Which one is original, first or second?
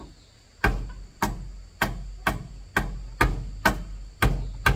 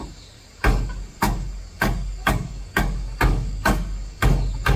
first